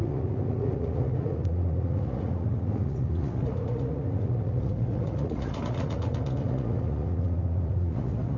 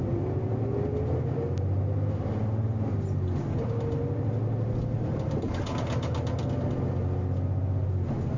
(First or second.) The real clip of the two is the second